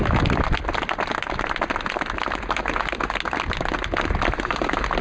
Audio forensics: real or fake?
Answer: real